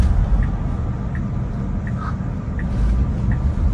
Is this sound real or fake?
real